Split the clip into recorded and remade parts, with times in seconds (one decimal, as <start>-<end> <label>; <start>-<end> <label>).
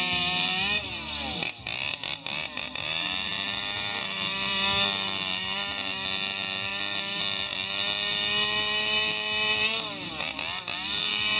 0.0-11.4 remade